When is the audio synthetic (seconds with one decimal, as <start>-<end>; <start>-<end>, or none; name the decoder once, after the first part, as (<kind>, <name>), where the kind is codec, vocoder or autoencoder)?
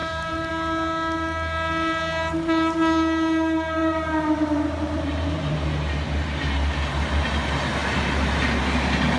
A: 0.0-0.5 (vocoder, BigVGAN v2); 3.8-5.7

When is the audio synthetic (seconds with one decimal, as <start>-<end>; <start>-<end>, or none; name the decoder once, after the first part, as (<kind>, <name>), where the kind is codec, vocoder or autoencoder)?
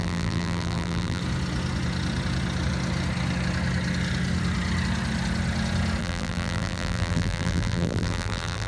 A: 0.0-1.2 (vocoder, BigVGAN v2); 6.0-8.7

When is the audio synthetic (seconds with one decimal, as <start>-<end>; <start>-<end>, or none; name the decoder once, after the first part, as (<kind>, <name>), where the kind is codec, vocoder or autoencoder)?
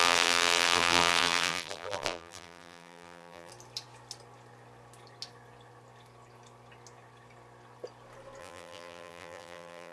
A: 0.0-3.5 (vocoder, BigVGAN v2); 8.4-9.9